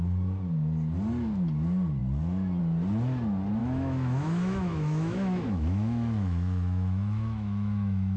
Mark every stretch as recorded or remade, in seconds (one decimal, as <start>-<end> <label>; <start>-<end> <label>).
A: 0.0-3.6 recorded; 3.6-8.2 remade